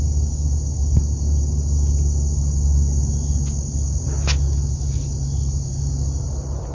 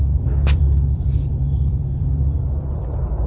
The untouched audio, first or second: first